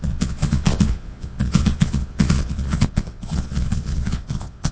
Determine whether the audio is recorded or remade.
remade